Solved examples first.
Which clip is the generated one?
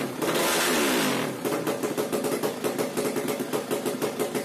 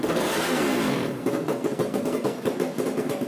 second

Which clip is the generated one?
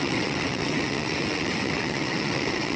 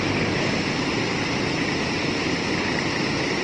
first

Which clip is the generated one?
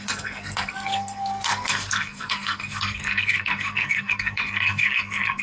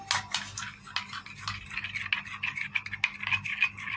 first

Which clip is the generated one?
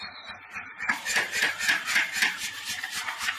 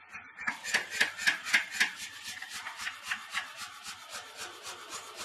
first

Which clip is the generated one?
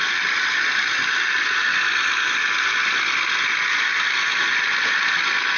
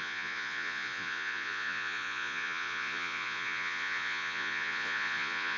second